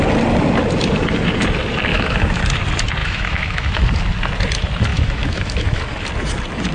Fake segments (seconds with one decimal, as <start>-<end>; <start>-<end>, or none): 1.9-2.4; 3.0-3.8; 4.9-5.8